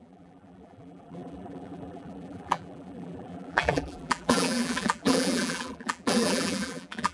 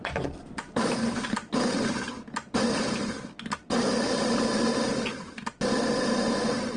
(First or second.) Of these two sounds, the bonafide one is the second